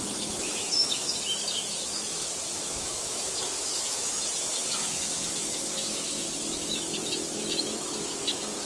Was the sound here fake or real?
fake